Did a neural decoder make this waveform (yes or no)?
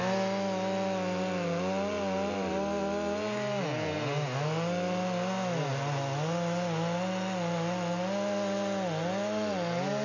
no